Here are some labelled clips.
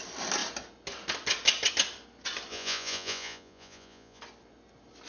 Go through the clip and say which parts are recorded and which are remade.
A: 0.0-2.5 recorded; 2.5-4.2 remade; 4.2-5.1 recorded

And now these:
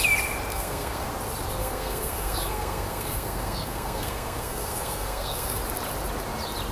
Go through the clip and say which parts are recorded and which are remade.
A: 0.0-0.5 recorded; 0.5-1.1 remade; 1.1-1.6 recorded; 1.6-5.6 remade; 5.6-6.7 recorded

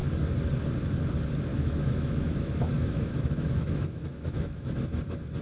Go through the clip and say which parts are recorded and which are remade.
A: 0.0-1.5 recorded; 1.5-4.7 remade; 4.7-5.4 recorded

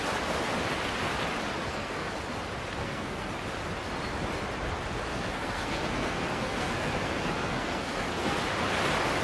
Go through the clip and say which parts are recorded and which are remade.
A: 0.0-1.5 recorded; 1.5-2.1 remade; 2.1-2.8 recorded; 2.8-3.3 remade; 3.3-5.1 recorded; 5.1-8.4 remade; 8.4-9.2 recorded

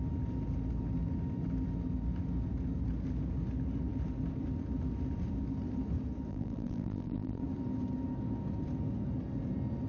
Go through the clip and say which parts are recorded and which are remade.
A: 0.0-6.3 recorded; 6.3-7.4 remade; 7.4-9.9 recorded

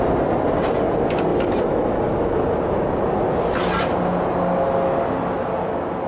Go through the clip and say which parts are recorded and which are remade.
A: 0.0-6.1 recorded